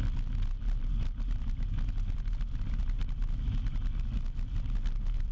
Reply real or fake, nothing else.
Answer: real